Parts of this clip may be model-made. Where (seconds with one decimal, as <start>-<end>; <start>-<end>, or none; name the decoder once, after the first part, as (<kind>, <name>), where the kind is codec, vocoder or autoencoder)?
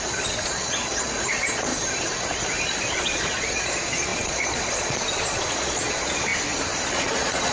0.0-1.7 (vocoder, Vocos); 2.9-6.3; 6.9-7.5